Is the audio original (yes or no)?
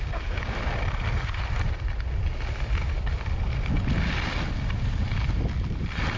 yes